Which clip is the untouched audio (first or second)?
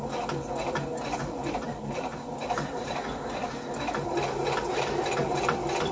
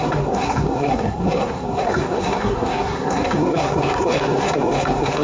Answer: first